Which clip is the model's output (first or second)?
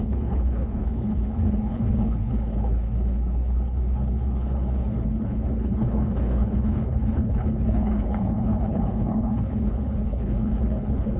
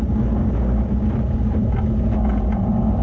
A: first